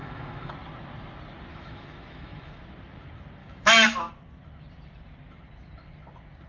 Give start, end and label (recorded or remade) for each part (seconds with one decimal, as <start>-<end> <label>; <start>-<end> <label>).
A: 0.0-0.5 remade; 0.5-1.5 recorded; 1.5-2.6 remade; 2.6-3.4 recorded; 3.4-4.1 remade; 4.1-6.5 recorded